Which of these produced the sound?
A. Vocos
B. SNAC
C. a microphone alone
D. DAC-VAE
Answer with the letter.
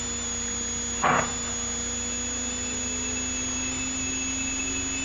C